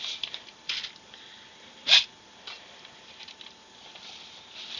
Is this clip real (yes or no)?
yes